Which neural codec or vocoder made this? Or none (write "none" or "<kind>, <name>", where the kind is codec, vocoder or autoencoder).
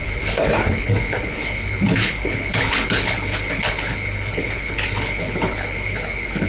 codec, HILCodec